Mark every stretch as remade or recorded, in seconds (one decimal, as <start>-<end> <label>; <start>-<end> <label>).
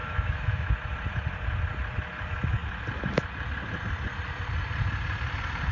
0.0-0.7 remade; 0.7-5.7 recorded